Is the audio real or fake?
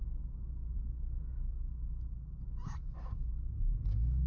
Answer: real